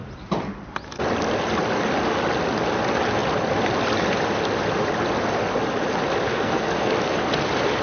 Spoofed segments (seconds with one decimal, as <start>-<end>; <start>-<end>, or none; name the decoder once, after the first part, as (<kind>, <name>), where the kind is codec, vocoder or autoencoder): 6.3-6.9 (codec, SNAC)